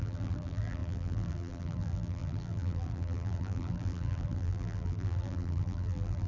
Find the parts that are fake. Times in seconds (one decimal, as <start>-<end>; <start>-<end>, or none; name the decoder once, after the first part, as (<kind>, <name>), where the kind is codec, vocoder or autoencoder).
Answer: 0.0-6.3 (vocoder, BigVGAN v2)